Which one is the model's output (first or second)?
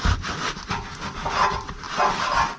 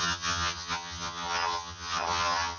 second